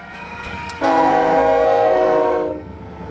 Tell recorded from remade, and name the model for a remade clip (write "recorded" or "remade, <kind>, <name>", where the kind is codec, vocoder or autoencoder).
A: remade, codec, SNAC